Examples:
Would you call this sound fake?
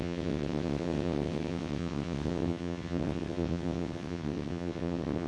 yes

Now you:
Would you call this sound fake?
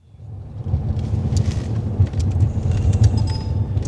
no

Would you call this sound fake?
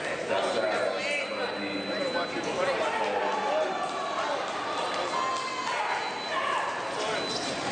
no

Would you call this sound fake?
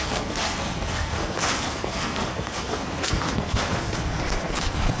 yes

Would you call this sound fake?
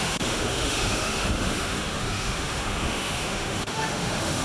yes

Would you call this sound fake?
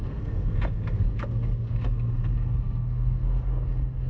yes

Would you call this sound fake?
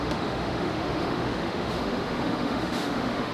yes